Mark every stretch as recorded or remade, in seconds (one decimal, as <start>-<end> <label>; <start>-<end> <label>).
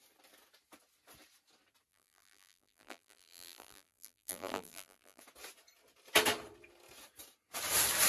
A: 0.0-1.9 recorded; 1.9-5.2 remade; 5.2-8.1 recorded